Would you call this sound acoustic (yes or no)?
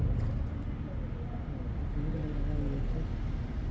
yes